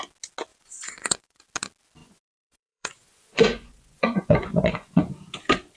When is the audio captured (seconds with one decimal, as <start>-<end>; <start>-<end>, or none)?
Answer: 0.0-0.5; 1.4-2.0; 5.1-5.8

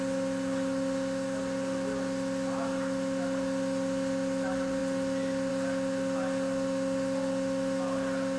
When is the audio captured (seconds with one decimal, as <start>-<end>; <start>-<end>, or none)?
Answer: 0.0-8.4

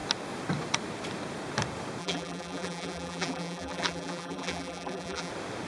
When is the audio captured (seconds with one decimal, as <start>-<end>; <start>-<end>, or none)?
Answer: 0.0-2.0; 5.3-5.7

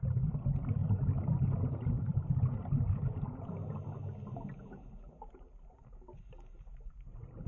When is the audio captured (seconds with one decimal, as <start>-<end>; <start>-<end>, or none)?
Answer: 0.0-7.5

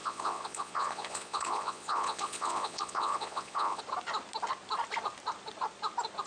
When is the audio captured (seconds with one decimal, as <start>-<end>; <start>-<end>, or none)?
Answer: 3.8-6.3

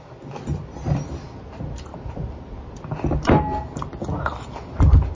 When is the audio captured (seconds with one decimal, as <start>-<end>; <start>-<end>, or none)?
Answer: 0.0-5.1

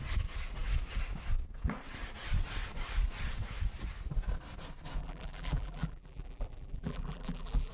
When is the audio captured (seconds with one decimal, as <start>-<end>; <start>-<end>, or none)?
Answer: 0.0-5.0